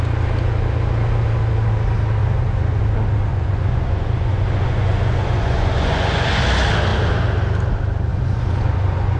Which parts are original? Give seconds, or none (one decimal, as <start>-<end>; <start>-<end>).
0.0-2.2; 2.8-3.3; 6.4-8.1

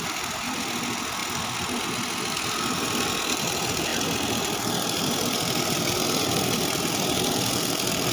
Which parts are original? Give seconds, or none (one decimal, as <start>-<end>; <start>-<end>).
1.2-2.3

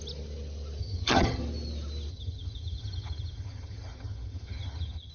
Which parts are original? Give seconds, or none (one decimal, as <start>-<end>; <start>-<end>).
0.0-0.8; 1.4-2.1

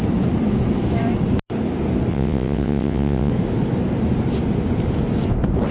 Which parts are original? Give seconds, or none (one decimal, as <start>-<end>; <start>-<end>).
0.0-2.1; 3.3-5.7

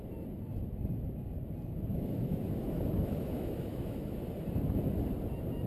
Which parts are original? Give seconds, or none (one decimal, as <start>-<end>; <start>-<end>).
0.0-1.9; 4.2-5.7